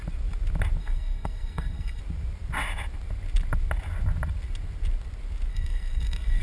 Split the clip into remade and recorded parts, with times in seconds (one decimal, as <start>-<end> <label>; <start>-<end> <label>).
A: 0.0-0.8 recorded; 0.8-2.0 remade; 2.0-5.5 recorded; 5.5-6.4 remade